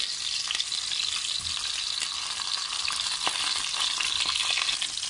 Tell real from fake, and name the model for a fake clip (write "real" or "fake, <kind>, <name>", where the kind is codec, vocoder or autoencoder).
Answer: real